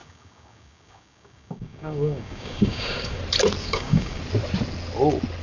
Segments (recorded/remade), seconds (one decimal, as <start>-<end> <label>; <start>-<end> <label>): 0.0-3.2 remade; 3.2-3.6 recorded; 3.6-4.2 remade; 4.2-5.4 recorded

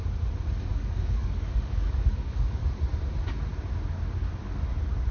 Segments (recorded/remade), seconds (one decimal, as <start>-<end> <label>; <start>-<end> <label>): 0.0-0.7 recorded; 0.7-2.6 remade; 2.6-5.1 recorded

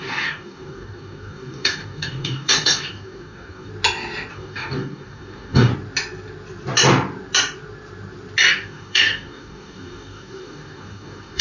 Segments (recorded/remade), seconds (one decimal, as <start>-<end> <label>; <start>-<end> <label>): 0.0-3.7 remade; 3.7-4.3 recorded; 4.3-5.7 remade; 5.7-8.5 recorded; 8.5-11.4 remade